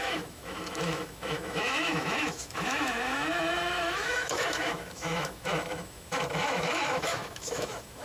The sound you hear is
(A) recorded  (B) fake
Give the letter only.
B